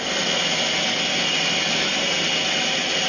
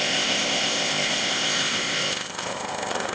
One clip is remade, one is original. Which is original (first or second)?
first